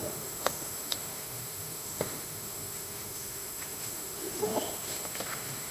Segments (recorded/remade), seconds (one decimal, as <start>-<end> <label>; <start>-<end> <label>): 0.0-5.7 remade